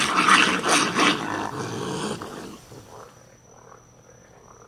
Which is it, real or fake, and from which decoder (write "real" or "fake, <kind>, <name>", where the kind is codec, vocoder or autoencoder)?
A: real